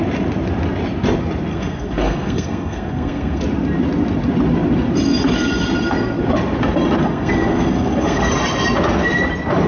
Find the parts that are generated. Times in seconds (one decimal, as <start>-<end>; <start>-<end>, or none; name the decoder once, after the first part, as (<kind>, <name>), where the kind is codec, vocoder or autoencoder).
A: 1.5-3.4 (codec, SNAC); 7.0-8.3